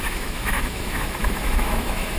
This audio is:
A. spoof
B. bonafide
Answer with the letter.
A